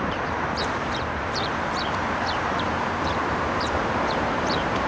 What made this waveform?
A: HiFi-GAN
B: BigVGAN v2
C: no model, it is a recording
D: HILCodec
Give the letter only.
B